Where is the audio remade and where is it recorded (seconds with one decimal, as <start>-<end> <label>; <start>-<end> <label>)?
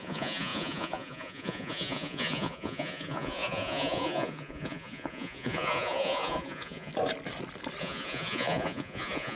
0.0-6.9 remade; 6.9-7.8 recorded; 7.8-9.4 remade